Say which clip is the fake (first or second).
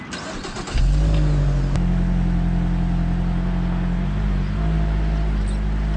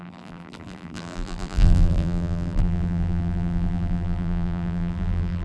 second